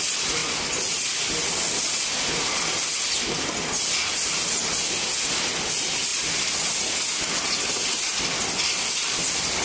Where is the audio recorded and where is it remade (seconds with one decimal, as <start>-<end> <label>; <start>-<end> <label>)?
0.0-9.6 recorded